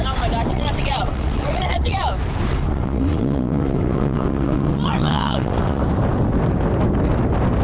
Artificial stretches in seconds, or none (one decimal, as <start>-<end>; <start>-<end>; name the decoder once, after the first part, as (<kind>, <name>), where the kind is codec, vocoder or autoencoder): 0.5-2.1 (vocoder, WaveNeXt); 2.5-5.8